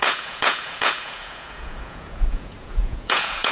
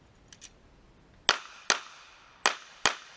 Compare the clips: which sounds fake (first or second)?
first